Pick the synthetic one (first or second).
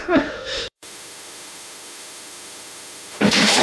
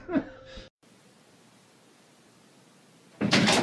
first